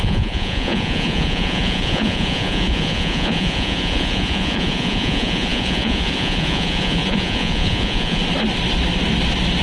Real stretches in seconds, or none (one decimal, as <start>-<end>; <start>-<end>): 8.2-9.6